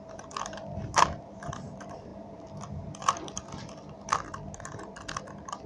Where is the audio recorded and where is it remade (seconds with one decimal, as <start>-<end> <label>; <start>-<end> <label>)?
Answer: 0.0-5.7 recorded